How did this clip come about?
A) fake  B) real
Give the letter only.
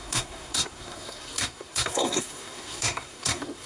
A